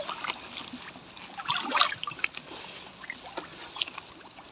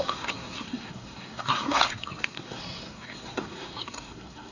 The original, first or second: first